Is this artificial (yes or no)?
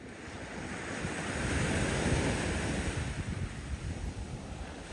no